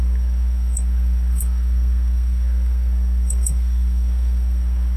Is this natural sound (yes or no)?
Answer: no